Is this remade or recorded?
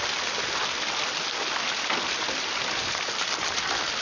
recorded